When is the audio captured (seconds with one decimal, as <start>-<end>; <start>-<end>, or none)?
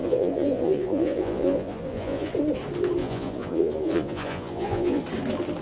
2.3-3.0; 5.0-5.6